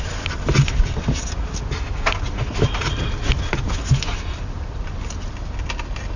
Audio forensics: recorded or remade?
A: recorded